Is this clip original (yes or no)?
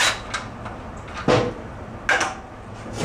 yes